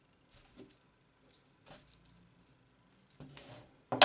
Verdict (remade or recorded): recorded